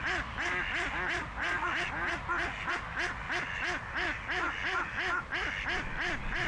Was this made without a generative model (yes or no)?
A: yes